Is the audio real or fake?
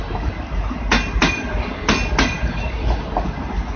real